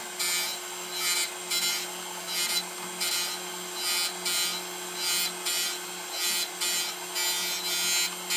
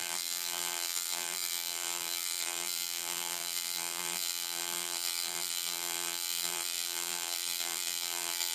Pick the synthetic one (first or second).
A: second